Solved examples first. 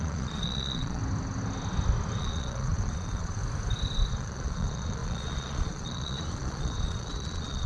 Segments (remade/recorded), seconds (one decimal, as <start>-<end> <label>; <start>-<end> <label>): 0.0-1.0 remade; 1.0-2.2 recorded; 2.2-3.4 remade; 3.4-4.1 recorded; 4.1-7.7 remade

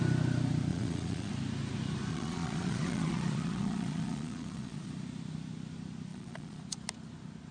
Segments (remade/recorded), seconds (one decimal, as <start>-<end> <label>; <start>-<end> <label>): 0.0-0.7 recorded; 0.7-1.3 remade; 1.3-2.1 recorded; 2.1-4.9 remade; 4.9-6.1 recorded; 6.1-6.6 remade; 6.6-7.5 recorded

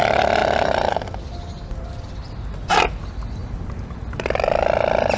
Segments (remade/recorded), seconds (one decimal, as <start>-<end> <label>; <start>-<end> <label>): 0.0-5.2 recorded

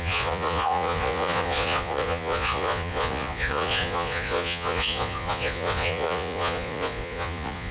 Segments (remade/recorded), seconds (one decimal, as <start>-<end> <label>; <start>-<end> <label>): 0.0-7.7 remade

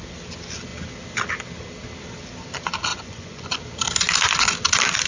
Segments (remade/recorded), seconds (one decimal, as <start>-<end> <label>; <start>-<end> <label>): 0.0-2.9 recorded; 2.9-3.6 remade; 3.6-5.1 recorded